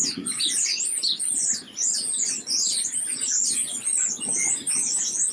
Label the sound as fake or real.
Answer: fake